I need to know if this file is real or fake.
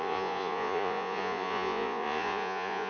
fake